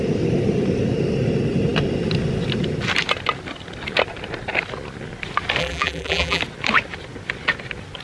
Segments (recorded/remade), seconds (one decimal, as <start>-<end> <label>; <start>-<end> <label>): 0.0-5.6 recorded; 5.6-6.4 remade; 6.4-8.0 recorded